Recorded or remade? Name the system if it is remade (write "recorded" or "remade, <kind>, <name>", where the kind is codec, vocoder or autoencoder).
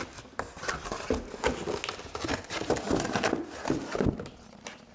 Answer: recorded